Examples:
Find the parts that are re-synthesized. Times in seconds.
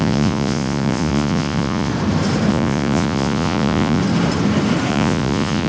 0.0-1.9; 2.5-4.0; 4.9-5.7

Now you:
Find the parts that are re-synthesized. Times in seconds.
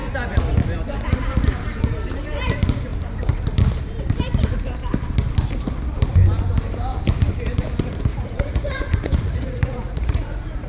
8.1-10.7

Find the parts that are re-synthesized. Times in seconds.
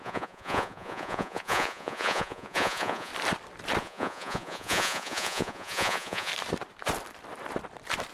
0.0-3.1; 3.8-6.3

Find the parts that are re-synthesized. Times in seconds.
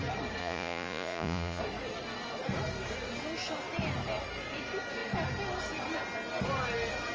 0.4-1.6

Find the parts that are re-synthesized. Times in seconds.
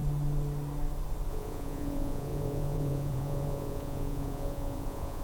1.3-5.2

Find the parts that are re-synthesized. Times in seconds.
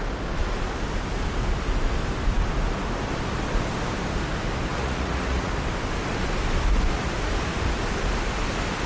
4.7-5.5